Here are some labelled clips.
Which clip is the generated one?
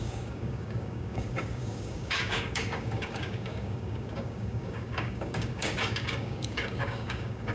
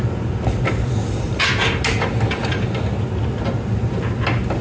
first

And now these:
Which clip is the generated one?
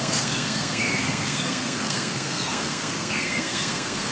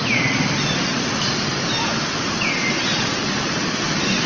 first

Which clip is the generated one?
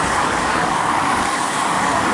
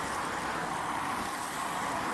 first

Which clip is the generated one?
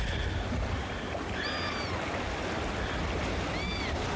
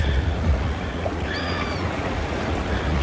second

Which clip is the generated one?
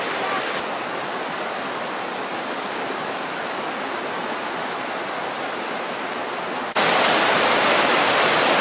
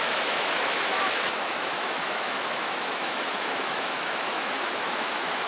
second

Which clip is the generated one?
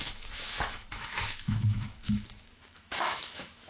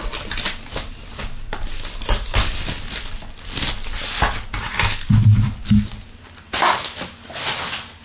first